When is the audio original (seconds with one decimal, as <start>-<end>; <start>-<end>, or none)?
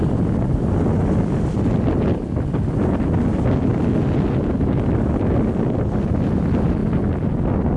0.0-7.8